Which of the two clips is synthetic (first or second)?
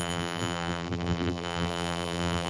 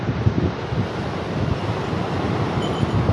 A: first